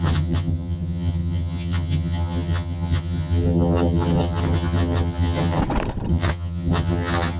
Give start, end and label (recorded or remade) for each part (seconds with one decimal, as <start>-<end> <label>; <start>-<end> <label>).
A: 0.0-5.6 remade; 5.6-6.1 recorded; 6.1-7.4 remade